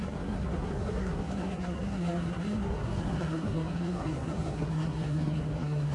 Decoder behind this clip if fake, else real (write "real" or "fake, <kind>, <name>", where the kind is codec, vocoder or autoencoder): fake, codec, SNAC